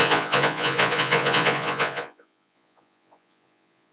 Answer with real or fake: fake